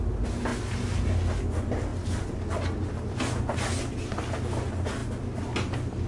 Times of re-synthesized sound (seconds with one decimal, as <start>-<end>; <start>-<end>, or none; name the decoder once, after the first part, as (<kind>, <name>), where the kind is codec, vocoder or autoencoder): none